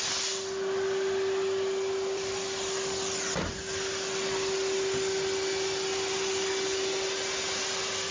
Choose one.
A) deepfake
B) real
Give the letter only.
B